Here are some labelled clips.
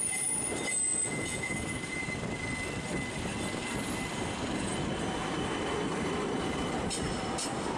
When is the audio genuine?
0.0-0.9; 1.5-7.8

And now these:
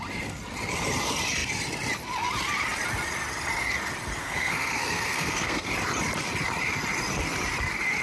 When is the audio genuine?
0.0-4.2; 5.7-8.0

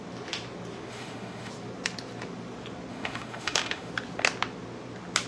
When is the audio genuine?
0.0-0.9; 1.5-2.9; 3.9-5.3

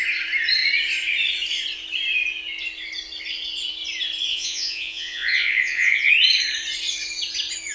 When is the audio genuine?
0.0-4.3; 6.1-7.7